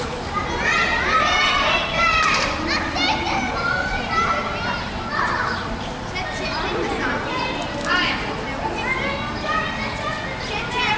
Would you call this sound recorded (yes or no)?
yes